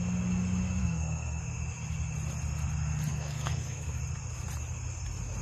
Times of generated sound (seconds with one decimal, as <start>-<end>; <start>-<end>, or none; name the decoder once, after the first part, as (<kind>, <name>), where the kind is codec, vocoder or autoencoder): 0.8-1.4 (codec, SNAC); 3.1-4.0